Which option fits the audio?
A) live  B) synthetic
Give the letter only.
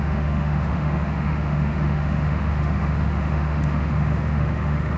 B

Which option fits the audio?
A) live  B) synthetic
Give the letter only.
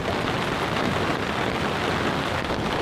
A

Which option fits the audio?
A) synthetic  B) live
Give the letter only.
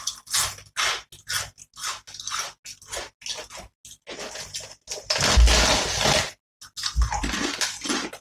B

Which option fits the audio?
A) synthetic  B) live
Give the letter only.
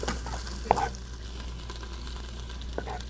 B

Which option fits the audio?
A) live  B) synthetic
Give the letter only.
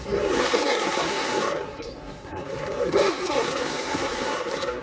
B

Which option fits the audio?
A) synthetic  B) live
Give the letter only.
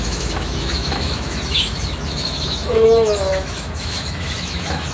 A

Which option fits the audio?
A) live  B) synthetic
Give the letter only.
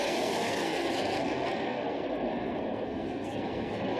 B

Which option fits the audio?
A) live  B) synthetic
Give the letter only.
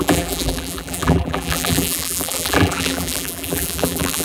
B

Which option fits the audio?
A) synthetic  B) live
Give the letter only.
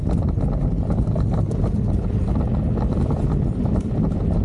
B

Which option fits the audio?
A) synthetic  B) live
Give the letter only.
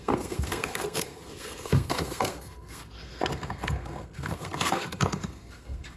A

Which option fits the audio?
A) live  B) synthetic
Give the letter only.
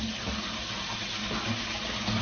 A